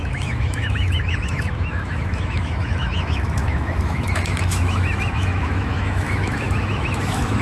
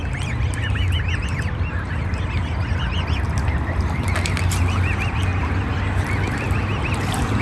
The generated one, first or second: first